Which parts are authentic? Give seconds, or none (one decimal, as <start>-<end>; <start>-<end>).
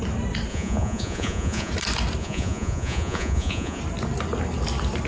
0.0-0.5; 1.7-2.2; 3.8-5.1